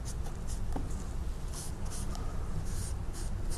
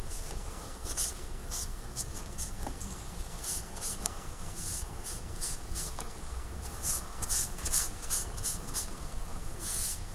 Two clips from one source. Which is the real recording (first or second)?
first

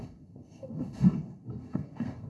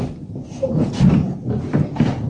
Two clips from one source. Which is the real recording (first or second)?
second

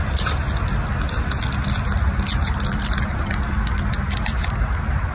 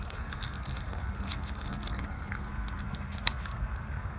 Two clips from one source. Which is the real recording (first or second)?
first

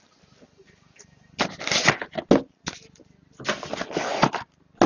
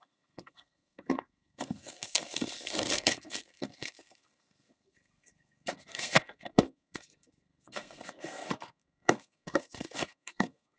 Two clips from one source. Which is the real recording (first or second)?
first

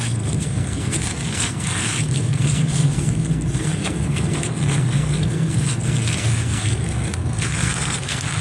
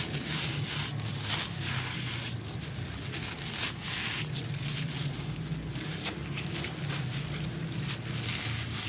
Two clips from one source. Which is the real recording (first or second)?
second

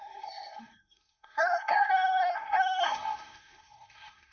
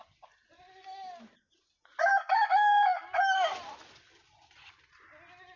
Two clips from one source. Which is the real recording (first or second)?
second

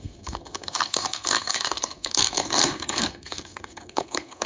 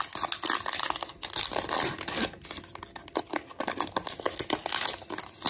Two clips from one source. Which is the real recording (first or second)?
second